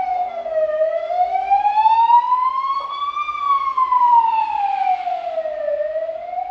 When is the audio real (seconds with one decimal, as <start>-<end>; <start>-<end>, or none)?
0.0-6.5